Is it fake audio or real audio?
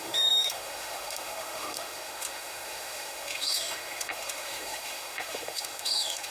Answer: fake